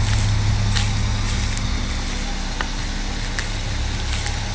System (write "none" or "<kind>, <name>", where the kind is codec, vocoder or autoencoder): none